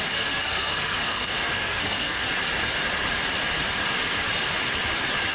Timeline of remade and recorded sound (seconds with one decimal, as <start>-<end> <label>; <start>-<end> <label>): 0.0-2.2 remade; 2.2-5.3 recorded